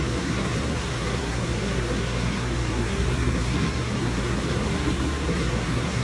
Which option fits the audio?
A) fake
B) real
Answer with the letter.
A